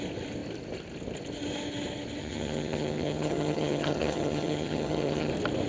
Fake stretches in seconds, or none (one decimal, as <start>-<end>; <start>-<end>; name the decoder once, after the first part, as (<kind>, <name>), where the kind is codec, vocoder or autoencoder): 2.2-5.3 (vocoder, HiFi-GAN)